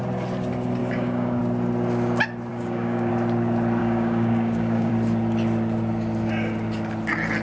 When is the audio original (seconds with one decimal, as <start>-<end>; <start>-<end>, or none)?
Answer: 0.0-0.8; 1.4-2.5; 3.1-3.8; 4.9-7.4

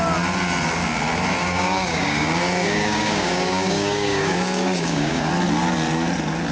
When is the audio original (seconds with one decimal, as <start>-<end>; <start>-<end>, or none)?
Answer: 0.0-1.4; 5.3-6.5

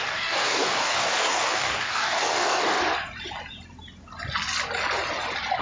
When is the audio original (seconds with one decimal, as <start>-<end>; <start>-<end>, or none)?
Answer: 2.8-5.6

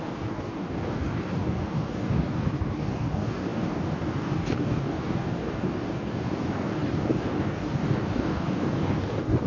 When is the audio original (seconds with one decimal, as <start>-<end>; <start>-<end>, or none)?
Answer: none

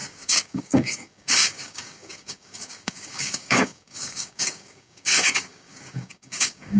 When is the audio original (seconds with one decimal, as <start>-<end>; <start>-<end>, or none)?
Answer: none

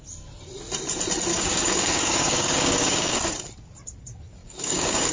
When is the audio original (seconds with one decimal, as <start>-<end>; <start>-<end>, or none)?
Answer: 0.0-1.3; 3.3-4.4